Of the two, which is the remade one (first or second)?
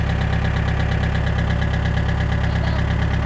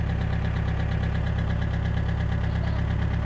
second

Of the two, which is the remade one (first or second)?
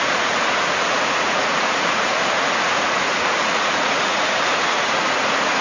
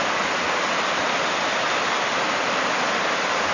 first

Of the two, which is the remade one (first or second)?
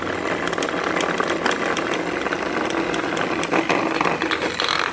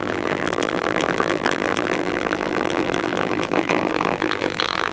second